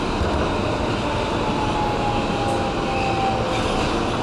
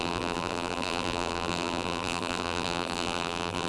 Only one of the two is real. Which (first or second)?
first